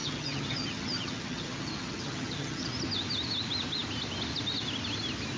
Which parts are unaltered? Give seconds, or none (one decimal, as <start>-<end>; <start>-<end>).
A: 2.7-5.4